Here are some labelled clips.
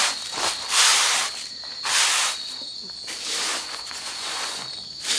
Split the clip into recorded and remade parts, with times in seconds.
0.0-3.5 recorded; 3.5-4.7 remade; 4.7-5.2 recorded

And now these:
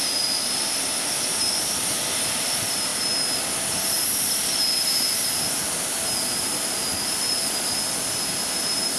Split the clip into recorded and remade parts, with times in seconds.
0.0-9.0 recorded